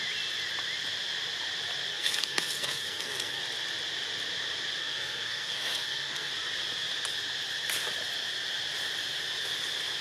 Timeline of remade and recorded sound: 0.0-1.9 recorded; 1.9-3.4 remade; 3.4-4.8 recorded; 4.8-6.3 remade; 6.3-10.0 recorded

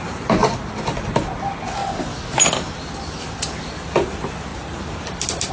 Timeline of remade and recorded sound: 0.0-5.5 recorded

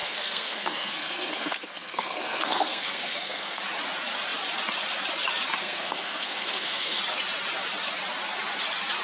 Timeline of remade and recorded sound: 0.0-3.6 remade; 3.6-5.6 recorded; 5.6-7.0 remade; 7.0-9.0 recorded

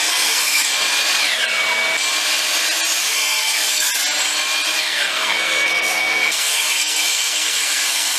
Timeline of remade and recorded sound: 0.0-0.7 remade; 0.7-3.0 recorded; 3.0-3.9 remade; 3.9-4.8 recorded; 4.8-8.2 remade

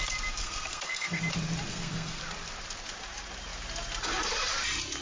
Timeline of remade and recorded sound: 0.0-0.4 recorded; 0.4-1.2 remade; 1.2-1.7 recorded; 1.7-2.2 remade; 2.2-5.0 recorded